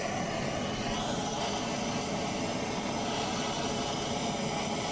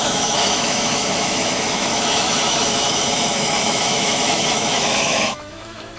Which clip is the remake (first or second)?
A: second